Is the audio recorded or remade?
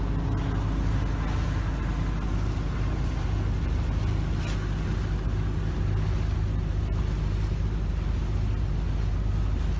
recorded